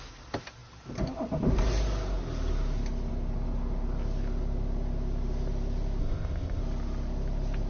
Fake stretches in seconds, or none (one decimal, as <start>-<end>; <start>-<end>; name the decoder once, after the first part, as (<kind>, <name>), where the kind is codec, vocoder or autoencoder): 6.0-6.6 (codec, ZipCodec)